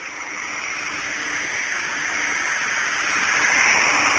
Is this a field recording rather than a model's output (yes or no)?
yes